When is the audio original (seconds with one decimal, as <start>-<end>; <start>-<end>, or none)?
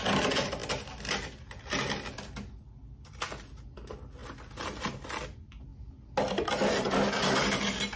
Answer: 0.0-8.0